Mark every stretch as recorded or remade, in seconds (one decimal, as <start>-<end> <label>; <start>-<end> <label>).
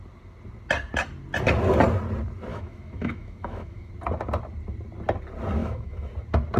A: 0.0-2.5 recorded; 2.5-3.9 remade; 3.9-5.6 recorded; 5.6-6.1 remade; 6.1-6.6 recorded